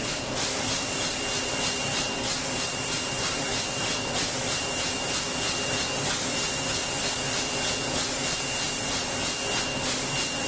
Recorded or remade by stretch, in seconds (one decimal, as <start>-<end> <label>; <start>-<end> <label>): 0.0-1.2 remade; 1.2-10.5 recorded